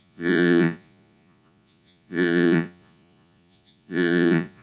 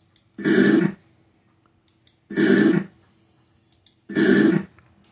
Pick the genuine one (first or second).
second